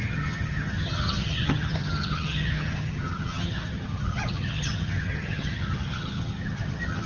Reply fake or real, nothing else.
fake